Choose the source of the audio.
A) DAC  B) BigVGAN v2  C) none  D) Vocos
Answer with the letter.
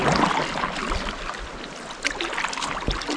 C